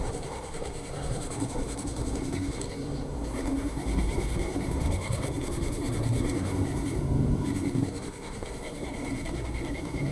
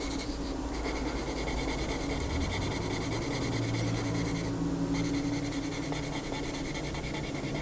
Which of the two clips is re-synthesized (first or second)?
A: first